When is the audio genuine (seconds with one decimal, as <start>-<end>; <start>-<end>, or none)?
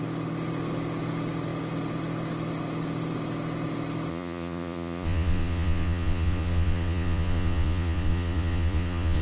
0.0-4.1